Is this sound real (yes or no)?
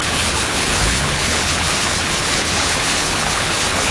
no